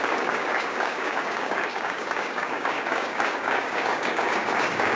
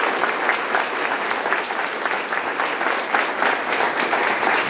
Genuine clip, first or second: second